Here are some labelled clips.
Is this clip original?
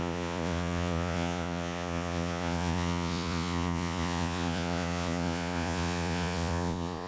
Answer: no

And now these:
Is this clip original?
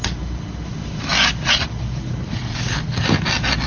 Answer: yes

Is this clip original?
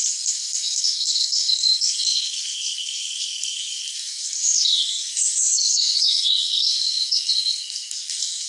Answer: no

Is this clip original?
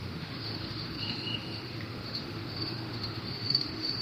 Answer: no